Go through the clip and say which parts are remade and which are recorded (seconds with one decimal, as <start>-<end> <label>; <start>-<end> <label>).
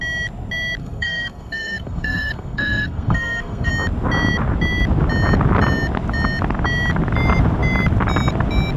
0.0-0.8 recorded; 0.8-3.7 remade; 3.7-8.8 recorded